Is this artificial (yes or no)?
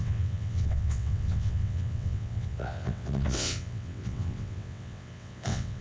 yes